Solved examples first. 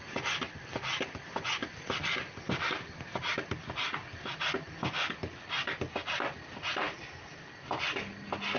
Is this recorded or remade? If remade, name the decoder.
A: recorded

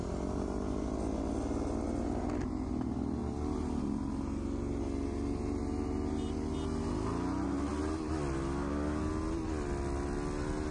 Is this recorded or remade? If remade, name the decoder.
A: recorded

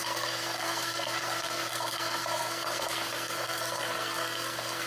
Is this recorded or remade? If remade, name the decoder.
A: remade, codec, SNAC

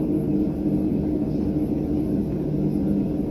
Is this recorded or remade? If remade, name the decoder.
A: recorded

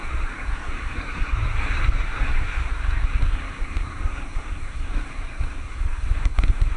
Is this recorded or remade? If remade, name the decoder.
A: remade, codec, SNAC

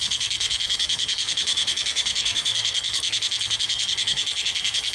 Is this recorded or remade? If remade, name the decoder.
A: remade, codec, SNAC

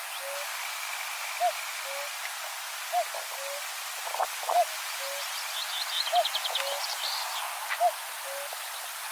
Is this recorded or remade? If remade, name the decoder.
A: recorded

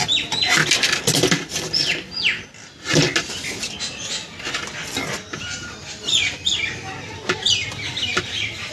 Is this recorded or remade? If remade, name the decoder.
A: recorded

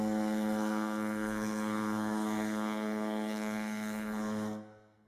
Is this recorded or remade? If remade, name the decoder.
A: remade, codec, SNAC